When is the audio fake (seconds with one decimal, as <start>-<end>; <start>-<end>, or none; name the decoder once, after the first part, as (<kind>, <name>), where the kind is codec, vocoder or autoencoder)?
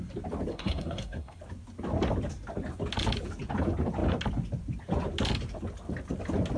0.5-1.4 (codec, SNAC)